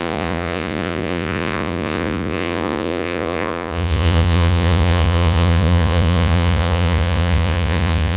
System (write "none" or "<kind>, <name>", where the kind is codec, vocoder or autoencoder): vocoder, Vocos